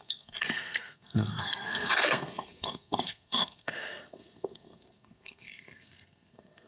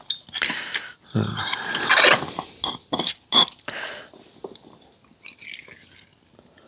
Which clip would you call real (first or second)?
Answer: second